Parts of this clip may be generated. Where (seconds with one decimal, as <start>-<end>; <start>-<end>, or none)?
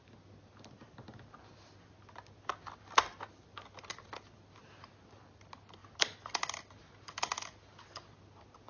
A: none